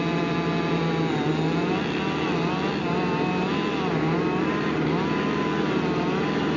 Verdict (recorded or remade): recorded